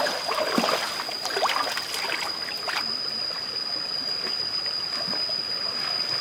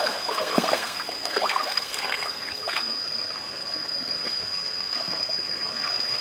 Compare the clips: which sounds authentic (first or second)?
first